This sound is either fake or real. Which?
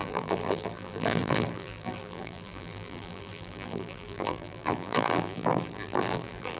fake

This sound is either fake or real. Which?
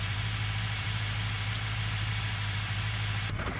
fake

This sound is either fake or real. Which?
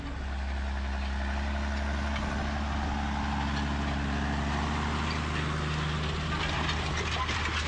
real